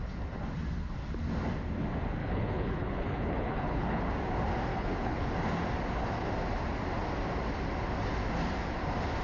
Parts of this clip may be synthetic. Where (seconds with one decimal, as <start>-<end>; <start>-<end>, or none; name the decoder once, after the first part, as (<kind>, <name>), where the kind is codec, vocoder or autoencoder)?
2.2-4.1 (codec, HILCodec); 4.7-5.3